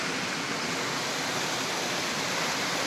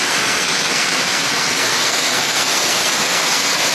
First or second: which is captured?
first